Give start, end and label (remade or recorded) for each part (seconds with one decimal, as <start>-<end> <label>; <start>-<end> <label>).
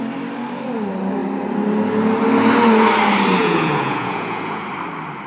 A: 0.0-3.4 recorded; 3.4-4.7 remade; 4.7-5.3 recorded